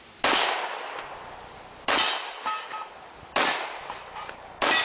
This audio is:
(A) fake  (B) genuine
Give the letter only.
B